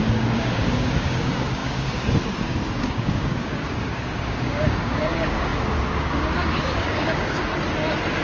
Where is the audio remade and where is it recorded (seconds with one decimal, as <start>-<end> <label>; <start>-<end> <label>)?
0.0-7.5 remade; 7.5-8.2 recorded